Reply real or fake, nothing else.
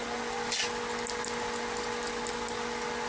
real